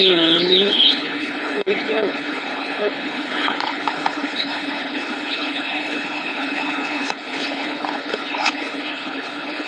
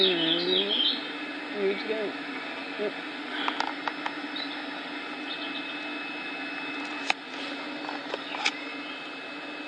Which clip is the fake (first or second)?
first